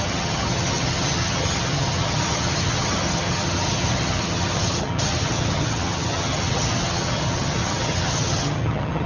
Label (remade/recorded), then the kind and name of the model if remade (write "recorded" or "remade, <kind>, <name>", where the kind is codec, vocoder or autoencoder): remade, vocoder, HiFi-GAN